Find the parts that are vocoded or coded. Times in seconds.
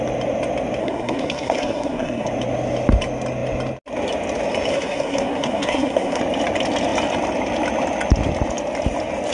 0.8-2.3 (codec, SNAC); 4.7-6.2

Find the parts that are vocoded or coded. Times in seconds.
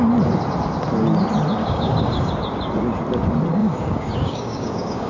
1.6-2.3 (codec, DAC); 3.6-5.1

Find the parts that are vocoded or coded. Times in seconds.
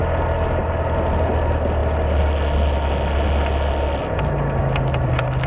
none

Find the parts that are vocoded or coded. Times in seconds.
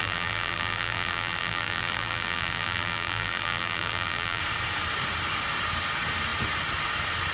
0.0-4.4 (vocoder, BigVGAN v2)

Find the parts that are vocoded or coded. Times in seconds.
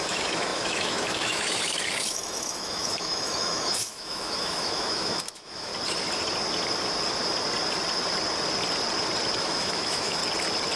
0.0-5.7 (autoencoder, DAC-VAE); 9.4-10.2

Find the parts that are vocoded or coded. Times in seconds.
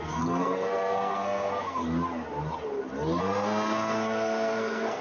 0.0-1.8 (codec, SNAC); 3.2-5.0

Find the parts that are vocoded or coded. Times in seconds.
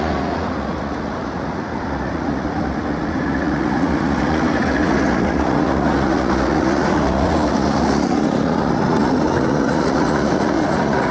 0.0-11.1 (vocoder, Vocos)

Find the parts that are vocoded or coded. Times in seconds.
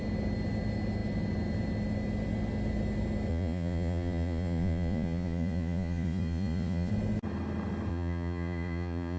3.3-6.9 (vocoder, Vocos); 7.9-9.2